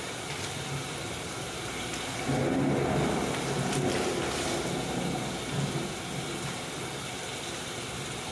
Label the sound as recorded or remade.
recorded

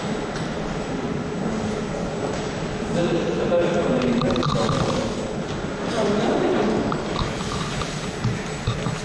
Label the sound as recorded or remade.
recorded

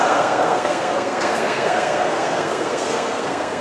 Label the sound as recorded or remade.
remade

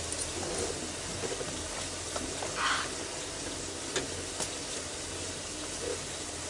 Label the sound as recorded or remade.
recorded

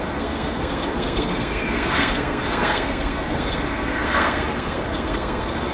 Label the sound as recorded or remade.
remade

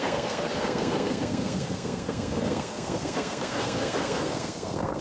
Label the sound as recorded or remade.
remade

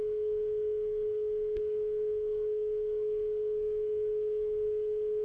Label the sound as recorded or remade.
remade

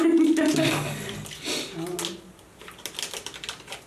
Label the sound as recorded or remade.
recorded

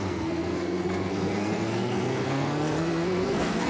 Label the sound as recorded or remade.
remade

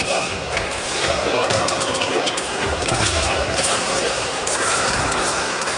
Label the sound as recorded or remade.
remade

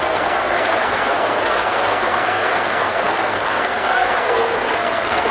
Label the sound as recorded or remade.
remade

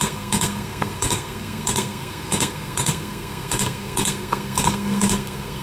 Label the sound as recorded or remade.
remade